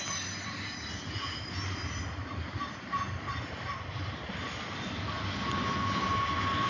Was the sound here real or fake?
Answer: real